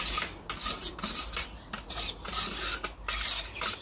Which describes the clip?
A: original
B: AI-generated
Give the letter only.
A